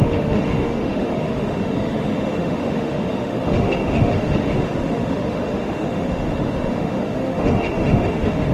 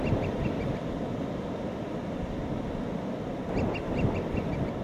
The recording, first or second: second